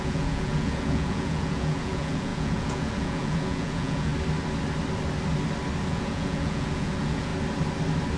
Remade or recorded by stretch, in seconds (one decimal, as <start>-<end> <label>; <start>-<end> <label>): 0.0-4.1 remade; 4.1-5.9 recorded; 5.9-7.3 remade; 7.3-8.2 recorded